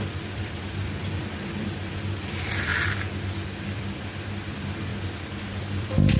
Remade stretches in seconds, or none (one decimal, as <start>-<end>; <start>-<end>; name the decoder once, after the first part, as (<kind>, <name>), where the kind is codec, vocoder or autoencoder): 0.0-2.7 (vocoder, BigVGAN v2); 3.6-4.9; 5.4-6.2